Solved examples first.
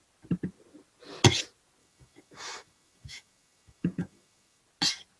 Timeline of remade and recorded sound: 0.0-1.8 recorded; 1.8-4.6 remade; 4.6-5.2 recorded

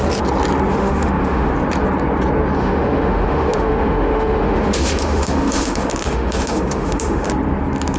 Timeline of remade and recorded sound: 0.0-0.7 recorded; 0.7-1.5 remade; 1.5-2.6 recorded; 2.6-7.3 remade; 7.3-8.0 recorded